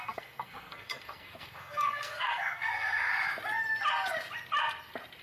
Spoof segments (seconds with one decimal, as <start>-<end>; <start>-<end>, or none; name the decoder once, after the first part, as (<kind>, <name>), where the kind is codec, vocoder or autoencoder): 0.0-3.1 (codec, SNAC)